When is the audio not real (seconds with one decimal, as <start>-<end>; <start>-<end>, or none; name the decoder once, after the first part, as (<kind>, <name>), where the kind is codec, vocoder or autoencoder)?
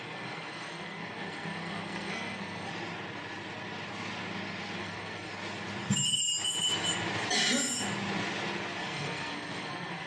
0.0-2.7 (codec, SNAC); 4.8-5.3; 8.8-10.1